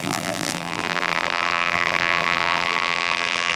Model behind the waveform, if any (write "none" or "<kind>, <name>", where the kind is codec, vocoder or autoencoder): vocoder, BigVGAN v2